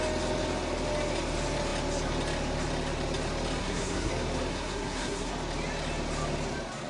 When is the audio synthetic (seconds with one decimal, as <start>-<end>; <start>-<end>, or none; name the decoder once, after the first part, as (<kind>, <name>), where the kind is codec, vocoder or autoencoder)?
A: 3.6-4.1 (codec, SNAC); 4.5-5.3